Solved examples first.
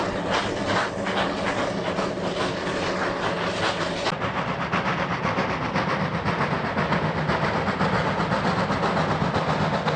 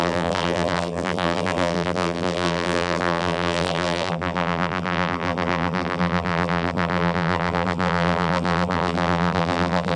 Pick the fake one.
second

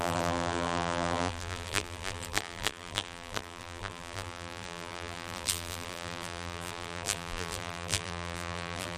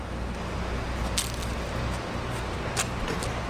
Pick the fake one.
first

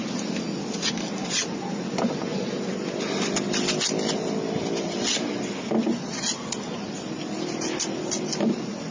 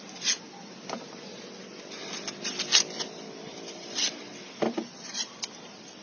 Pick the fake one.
second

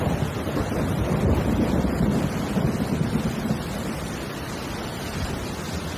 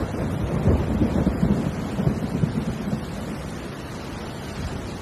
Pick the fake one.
first